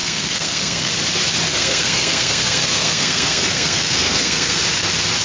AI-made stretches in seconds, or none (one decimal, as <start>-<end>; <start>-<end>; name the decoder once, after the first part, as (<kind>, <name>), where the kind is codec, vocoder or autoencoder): 0.0-0.9 (codec, SNAC); 1.5-4.6